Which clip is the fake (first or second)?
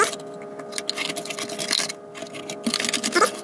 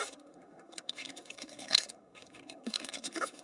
second